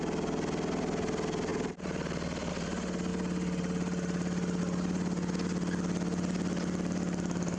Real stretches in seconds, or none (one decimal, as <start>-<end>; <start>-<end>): 0.0-7.6